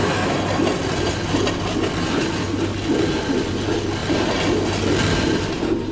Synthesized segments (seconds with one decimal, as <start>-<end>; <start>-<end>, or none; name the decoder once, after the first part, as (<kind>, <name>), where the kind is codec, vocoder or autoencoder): none